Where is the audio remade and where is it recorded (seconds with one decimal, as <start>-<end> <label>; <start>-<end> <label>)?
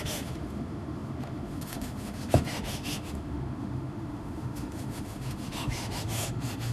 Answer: 0.0-6.7 remade